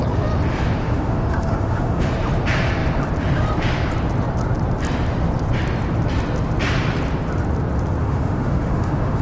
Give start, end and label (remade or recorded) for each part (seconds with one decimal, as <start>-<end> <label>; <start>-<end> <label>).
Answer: 0.0-0.8 recorded; 0.8-2.1 remade; 2.1-8.0 recorded; 8.0-9.2 remade